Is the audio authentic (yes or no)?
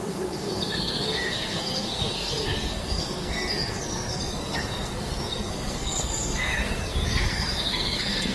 no